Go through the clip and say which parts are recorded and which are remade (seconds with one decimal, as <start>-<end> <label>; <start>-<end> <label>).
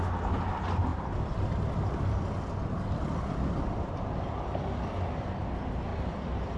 0.0-0.9 recorded; 0.9-4.9 remade; 4.9-5.9 recorded; 5.9-6.6 remade